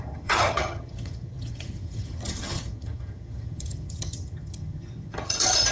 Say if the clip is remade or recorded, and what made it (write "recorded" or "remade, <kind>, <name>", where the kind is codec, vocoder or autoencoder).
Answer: remade, vocoder, HiFi-GAN